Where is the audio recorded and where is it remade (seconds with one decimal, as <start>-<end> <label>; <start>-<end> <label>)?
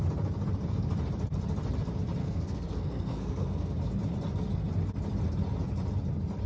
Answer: 0.0-2.2 recorded; 2.2-3.7 remade; 3.7-6.5 recorded